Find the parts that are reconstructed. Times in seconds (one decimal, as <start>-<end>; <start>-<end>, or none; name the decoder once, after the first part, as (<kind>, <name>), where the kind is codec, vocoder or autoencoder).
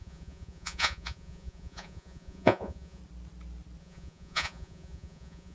0.0-3.0 (vocoder, Vocos); 3.8-5.5